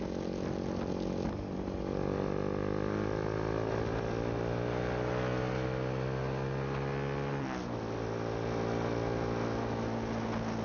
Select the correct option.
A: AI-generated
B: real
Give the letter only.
B